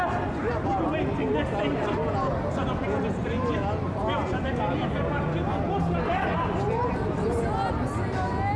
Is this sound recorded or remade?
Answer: recorded